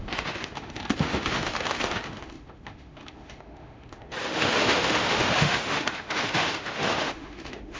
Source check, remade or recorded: remade